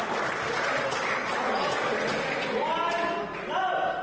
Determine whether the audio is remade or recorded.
recorded